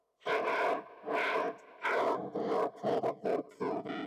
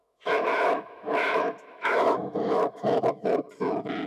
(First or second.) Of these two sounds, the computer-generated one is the second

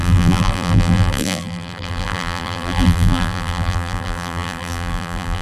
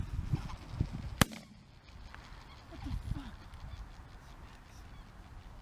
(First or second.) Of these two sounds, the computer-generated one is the first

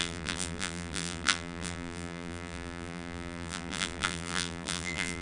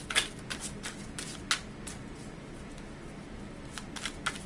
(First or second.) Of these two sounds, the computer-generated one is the first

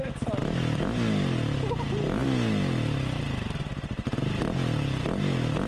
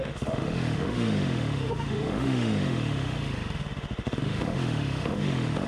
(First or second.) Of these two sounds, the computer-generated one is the second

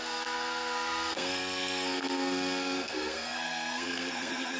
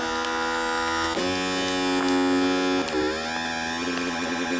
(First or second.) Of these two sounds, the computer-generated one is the first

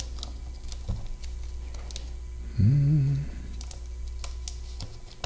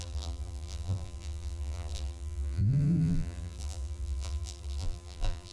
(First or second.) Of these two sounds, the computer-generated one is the second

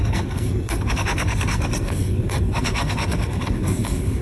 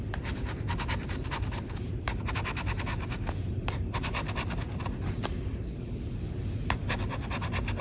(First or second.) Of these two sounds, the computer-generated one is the first